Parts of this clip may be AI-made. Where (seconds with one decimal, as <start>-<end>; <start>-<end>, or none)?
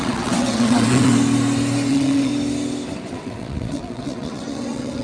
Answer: 0.0-1.1; 1.9-2.3; 3.1-5.0